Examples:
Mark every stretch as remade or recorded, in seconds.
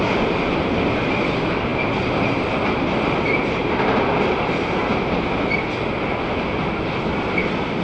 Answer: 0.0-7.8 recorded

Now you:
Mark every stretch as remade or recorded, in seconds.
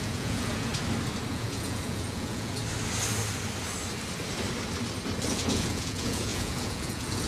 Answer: 0.0-0.7 remade; 0.7-1.3 recorded; 1.3-2.6 remade; 2.6-5.3 recorded; 5.3-7.3 remade